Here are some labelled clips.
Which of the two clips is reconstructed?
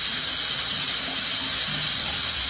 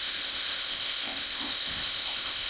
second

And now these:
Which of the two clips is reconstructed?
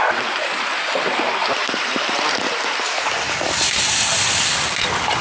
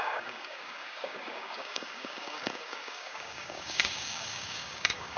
second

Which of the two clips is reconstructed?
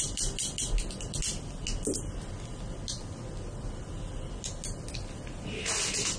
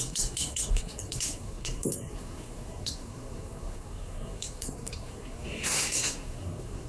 second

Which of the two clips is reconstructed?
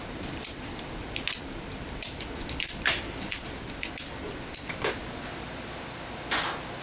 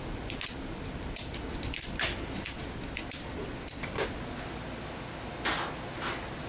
first